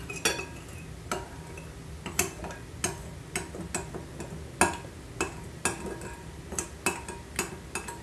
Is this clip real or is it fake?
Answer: real